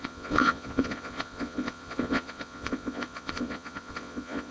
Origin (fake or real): fake